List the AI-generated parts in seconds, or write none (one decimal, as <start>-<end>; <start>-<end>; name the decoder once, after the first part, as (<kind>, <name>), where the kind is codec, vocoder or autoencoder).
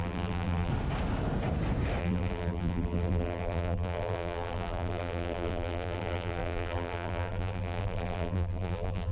0.0-0.7 (vocoder, BigVGAN v2); 2.0-9.1